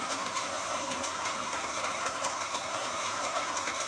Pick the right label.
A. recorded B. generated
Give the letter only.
B